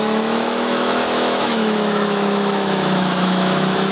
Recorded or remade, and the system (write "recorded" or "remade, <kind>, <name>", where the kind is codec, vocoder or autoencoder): remade, autoencoder, DAC-VAE